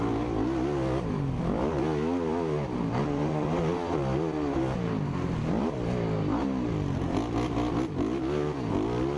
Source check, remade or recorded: recorded